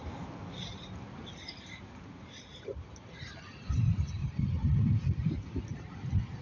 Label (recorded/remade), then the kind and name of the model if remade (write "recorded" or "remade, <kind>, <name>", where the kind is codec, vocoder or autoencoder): remade, vocoder, BigVGAN v2